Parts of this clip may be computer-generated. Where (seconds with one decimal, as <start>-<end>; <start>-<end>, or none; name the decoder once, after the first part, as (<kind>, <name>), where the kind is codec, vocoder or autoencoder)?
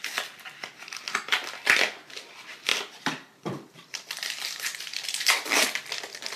2.7-5.2 (vocoder, BigVGAN v2)